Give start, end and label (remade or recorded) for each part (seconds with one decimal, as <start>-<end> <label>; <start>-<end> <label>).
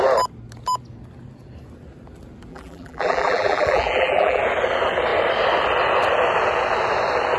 0.0-2.5 recorded; 2.5-4.4 remade; 4.4-7.4 recorded